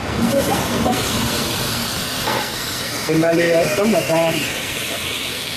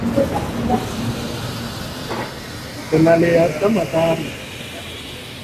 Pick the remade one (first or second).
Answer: first